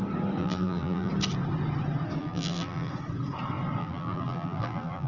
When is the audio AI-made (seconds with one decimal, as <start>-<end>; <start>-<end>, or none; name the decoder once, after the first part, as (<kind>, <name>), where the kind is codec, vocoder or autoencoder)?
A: 0.4-1.1 (vocoder, BigVGAN v2); 2.2-2.9; 3.8-5.1